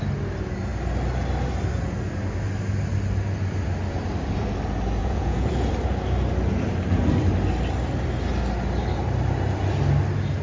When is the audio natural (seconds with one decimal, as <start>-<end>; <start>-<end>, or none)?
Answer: 0.0-5.0; 5.7-10.4